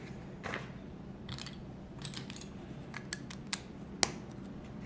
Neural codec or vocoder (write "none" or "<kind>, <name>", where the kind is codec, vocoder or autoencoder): none